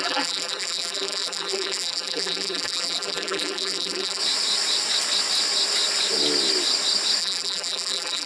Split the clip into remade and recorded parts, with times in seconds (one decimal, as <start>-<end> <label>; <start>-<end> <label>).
0.0-4.2 remade; 4.2-7.2 recorded; 7.2-8.3 remade